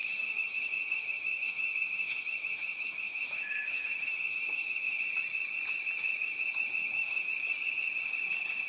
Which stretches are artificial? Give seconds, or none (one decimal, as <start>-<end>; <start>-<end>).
0.0-5.0; 6.8-7.3